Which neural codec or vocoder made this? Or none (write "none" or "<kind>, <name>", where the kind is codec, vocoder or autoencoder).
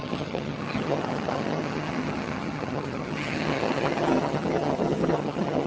vocoder, HiFi-GAN